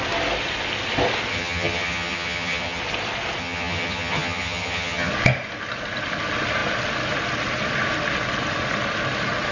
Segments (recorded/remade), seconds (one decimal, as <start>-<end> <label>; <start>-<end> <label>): 0.0-1.3 recorded; 1.3-2.8 remade; 2.8-3.4 recorded; 3.4-5.1 remade; 5.1-9.5 recorded